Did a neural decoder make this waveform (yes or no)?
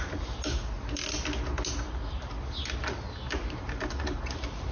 no